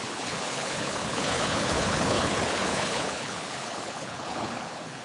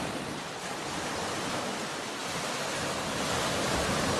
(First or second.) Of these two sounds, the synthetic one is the first